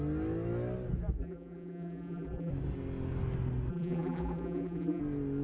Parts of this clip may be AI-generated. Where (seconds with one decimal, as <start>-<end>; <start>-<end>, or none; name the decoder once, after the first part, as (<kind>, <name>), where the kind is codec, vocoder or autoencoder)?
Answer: 1.2-2.5 (vocoder, BigVGAN v2); 3.7-5.0